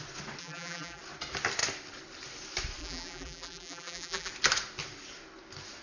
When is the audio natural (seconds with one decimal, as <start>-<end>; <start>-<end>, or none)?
0.0-0.4; 1.0-2.8; 4.3-5.8